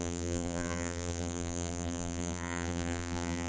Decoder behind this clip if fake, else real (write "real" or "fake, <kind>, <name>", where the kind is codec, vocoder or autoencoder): fake, vocoder, BigVGAN v2